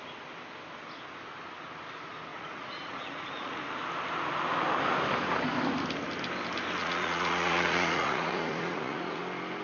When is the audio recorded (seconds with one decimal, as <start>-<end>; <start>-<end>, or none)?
0.0-2.3; 3.6-6.8; 9.2-9.6